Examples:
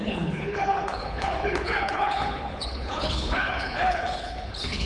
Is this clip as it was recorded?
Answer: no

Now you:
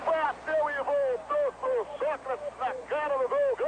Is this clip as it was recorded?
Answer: yes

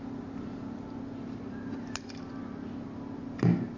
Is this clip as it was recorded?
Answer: yes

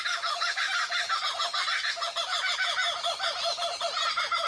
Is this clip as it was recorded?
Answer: yes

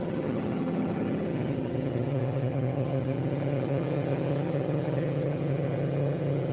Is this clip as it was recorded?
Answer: no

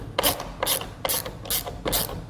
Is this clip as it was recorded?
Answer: yes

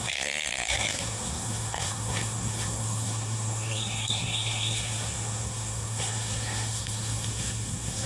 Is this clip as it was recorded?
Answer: no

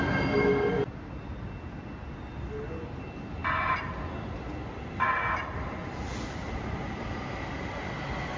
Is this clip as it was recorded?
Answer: yes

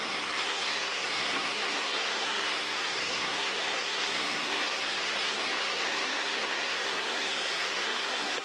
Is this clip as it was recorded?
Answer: no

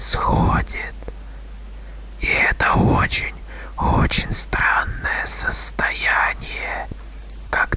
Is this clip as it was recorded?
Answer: yes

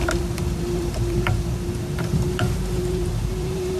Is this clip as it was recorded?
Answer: no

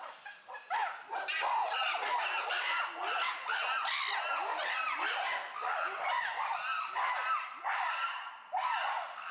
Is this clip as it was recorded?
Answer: yes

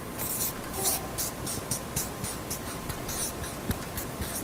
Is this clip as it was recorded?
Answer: yes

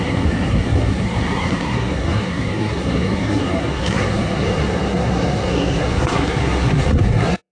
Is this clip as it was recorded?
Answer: no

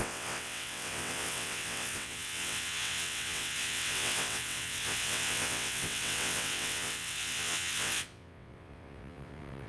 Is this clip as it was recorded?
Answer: no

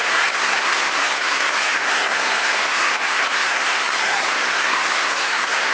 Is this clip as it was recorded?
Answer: no